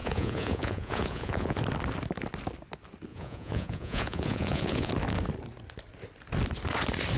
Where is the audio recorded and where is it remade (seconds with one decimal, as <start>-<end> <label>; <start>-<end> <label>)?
0.0-1.6 remade; 1.6-3.1 recorded; 3.1-4.9 remade; 4.9-7.2 recorded